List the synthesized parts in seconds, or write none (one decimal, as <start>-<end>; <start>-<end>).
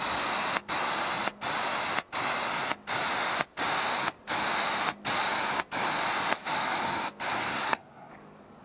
7.5-8.1